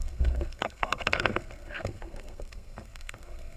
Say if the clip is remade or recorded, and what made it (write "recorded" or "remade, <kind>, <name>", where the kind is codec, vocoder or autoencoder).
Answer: remade, codec, SNAC